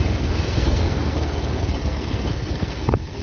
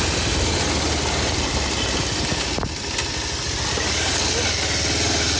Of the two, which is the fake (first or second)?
first